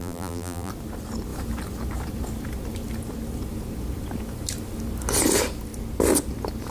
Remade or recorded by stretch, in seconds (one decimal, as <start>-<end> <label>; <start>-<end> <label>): 0.0-0.7 remade; 0.7-6.7 recorded